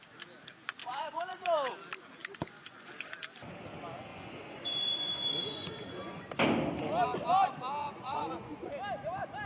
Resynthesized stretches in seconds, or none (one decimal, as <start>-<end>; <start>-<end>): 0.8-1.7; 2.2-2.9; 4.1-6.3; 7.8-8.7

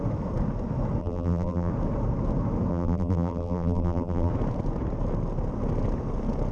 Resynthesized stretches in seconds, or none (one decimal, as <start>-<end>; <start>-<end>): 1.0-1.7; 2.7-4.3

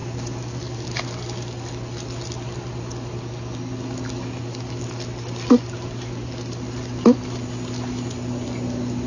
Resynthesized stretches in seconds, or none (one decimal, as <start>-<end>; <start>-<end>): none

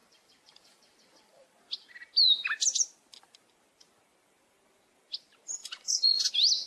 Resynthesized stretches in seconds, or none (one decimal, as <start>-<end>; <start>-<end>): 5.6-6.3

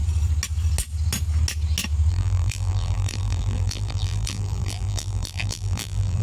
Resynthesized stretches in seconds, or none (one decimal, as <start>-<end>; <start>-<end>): 2.1-6.2

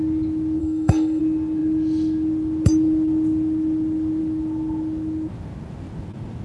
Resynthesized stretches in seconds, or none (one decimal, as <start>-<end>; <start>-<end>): 0.6-1.2